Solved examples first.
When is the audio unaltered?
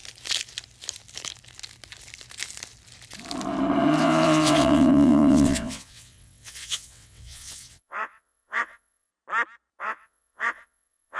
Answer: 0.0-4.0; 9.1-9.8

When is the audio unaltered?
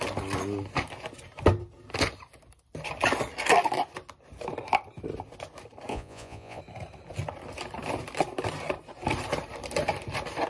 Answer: 0.0-5.9; 6.6-10.5